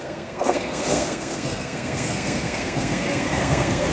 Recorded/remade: remade